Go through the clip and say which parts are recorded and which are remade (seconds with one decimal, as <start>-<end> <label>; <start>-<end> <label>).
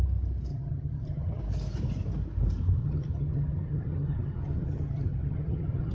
0.0-0.5 recorded; 0.5-1.4 remade; 1.4-2.8 recorded; 2.8-5.9 remade